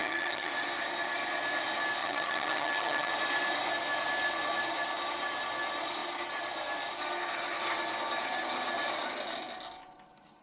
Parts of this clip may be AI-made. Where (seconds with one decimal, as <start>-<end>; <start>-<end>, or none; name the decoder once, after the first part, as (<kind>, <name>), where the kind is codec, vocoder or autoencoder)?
0.0-0.5 (vocoder, HiFi-GAN); 2.0-3.1